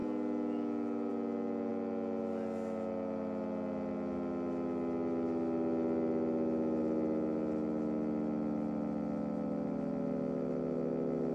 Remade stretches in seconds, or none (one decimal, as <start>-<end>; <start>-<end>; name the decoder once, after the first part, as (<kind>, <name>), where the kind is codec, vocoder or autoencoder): none